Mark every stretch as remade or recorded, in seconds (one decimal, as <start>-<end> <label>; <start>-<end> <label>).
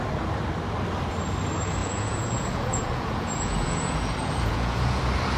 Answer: 0.0-1.8 recorded; 1.8-5.0 remade; 5.0-5.4 recorded